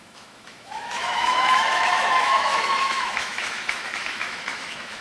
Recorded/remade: remade